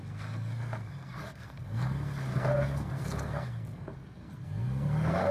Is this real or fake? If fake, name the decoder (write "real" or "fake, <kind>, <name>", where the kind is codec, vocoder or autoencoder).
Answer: fake, codec, SNAC